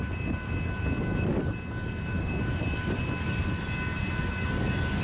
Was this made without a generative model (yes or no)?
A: yes